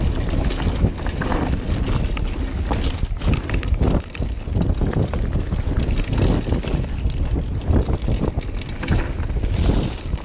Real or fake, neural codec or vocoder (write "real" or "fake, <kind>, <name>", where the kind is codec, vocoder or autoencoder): real